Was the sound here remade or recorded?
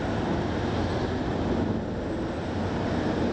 recorded